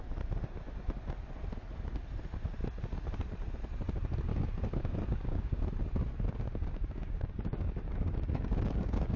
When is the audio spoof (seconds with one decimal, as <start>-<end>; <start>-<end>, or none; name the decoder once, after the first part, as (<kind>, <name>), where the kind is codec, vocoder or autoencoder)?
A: 4.3-5.6 (codec, DAC); 6.5-9.2